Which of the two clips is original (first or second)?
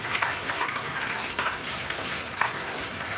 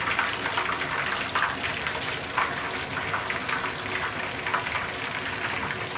second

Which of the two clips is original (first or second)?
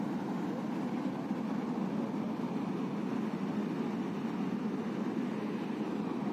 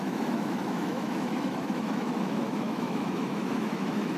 first